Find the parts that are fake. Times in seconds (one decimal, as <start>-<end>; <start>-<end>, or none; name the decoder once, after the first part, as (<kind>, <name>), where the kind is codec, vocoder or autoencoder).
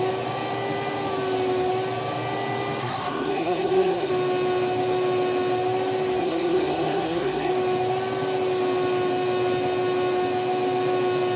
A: 2.8-4.1 (codec, SNAC); 6.2-7.5